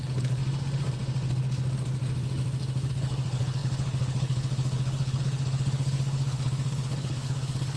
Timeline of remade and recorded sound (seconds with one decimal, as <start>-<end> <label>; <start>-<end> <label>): 0.0-0.4 remade; 0.4-2.9 recorded; 2.9-7.8 remade

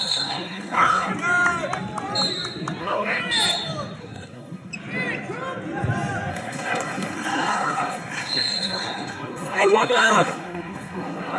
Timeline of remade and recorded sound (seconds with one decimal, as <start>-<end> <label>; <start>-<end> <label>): 0.0-1.1 remade; 1.1-2.8 recorded; 2.8-3.2 remade; 3.2-4.0 recorded; 4.0-4.7 remade; 4.7-6.3 recorded; 6.3-11.4 remade

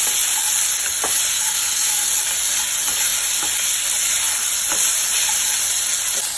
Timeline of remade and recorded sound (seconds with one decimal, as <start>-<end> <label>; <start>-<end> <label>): 0.0-1.3 recorded; 1.3-2.1 remade; 2.1-6.4 recorded

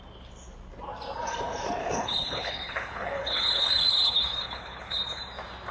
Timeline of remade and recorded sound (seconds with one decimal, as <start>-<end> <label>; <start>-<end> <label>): 0.0-1.8 recorded; 1.8-5.2 remade; 5.2-5.7 recorded